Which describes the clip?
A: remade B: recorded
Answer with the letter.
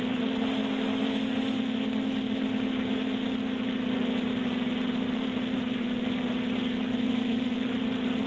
B